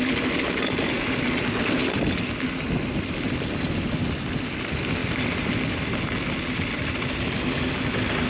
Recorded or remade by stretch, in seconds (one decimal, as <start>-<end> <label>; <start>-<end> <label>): 0.0-8.3 recorded